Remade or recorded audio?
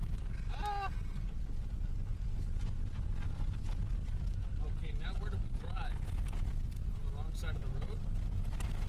recorded